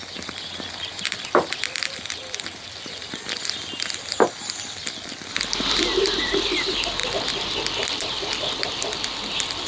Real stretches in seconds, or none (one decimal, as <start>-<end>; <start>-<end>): 0.0-2.2; 3.0-7.0; 9.0-9.7

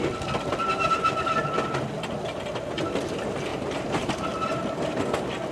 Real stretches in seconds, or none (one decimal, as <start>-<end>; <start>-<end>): 0.0-0.5; 1.4-3.5; 5.0-5.5

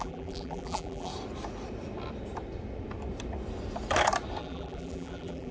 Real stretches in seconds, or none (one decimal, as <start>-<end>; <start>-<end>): 1.1-4.4

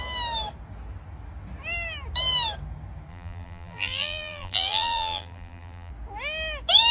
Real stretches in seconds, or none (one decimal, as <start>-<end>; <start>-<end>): 0.0-3.1; 5.9-6.9

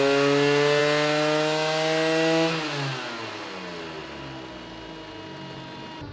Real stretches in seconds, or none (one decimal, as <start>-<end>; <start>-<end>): 0.0-6.1

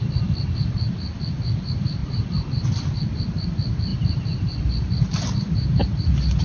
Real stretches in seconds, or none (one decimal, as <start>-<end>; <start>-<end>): 0.0-6.4

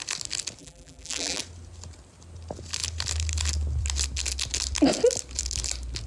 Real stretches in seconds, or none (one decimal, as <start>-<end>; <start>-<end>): 0.0-0.6; 1.4-6.1

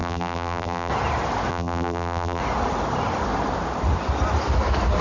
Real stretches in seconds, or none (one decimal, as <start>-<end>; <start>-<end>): 0.9-1.5; 2.4-5.0